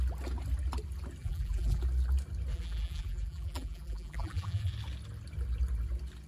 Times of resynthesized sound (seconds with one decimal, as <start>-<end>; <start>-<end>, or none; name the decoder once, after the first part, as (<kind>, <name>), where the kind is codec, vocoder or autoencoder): 1.2-1.8 (vocoder, BigVGAN v2); 2.5-4.7

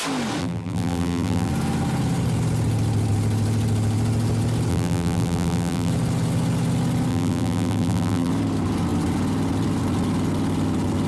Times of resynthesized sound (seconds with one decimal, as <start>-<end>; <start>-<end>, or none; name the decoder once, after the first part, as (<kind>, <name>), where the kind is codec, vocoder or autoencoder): 0.4-1.5 (vocoder, BigVGAN v2); 4.7-5.9; 7.1-8.3

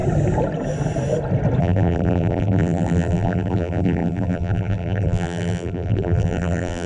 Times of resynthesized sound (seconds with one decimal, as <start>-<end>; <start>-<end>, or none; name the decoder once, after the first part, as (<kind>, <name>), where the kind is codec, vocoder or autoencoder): 1.6-6.9 (vocoder, BigVGAN v2)

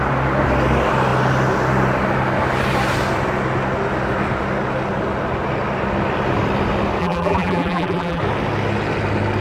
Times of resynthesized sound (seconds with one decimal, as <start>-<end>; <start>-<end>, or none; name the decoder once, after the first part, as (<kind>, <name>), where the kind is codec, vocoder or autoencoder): 7.0-8.2 (vocoder, BigVGAN v2)

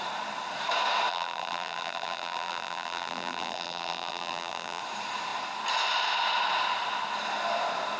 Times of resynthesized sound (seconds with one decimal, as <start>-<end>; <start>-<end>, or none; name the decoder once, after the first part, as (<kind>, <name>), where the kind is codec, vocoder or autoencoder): 1.1-4.8 (vocoder, BigVGAN v2)

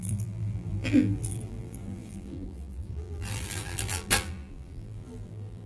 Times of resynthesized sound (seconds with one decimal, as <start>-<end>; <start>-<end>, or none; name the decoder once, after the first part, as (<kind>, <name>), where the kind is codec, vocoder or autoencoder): 0.0-5.7 (vocoder, BigVGAN v2)